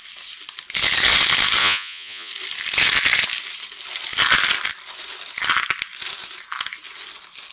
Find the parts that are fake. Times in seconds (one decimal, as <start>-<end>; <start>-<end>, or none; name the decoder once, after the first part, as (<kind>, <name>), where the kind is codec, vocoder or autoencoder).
1.6-2.3 (vocoder, Vocos)